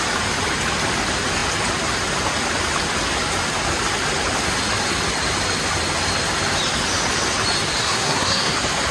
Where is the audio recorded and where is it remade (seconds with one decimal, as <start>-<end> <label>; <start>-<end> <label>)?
0.0-7.8 recorded; 7.8-8.5 remade; 8.5-8.9 recorded